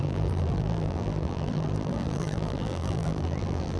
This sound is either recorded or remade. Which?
remade